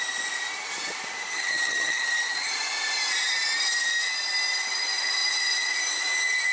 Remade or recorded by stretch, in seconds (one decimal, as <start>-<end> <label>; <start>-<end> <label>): 0.0-1.3 recorded; 1.3-2.5 remade; 2.5-6.5 recorded